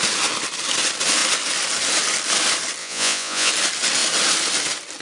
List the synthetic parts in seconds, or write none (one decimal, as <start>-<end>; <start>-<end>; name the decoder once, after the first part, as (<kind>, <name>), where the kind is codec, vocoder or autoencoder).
2.8-3.5 (vocoder, Vocos)